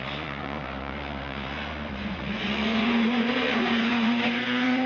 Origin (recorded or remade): remade